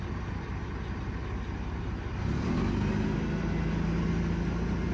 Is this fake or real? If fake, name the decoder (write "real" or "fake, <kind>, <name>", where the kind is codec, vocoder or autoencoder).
real